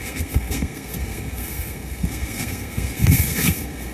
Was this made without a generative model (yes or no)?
no